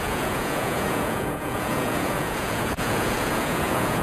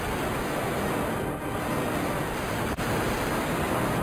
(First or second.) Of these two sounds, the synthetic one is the first